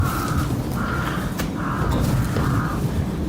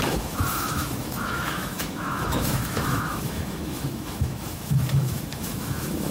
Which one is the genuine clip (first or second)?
first